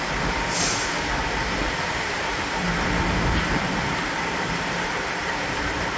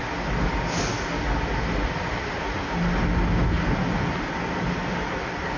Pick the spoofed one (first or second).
first